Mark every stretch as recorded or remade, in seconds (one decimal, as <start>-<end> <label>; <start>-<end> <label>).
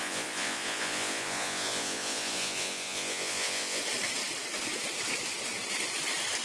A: 0.0-3.8 remade; 3.8-6.4 recorded